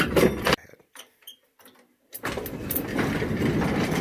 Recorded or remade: remade